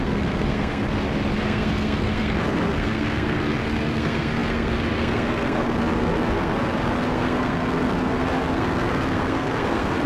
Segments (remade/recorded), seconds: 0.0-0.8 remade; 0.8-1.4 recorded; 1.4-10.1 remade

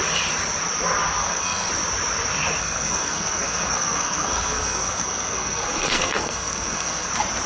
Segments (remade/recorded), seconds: 0.0-1.2 recorded; 1.2-1.7 remade; 1.7-2.6 recorded; 2.6-7.1 remade; 7.1-7.5 recorded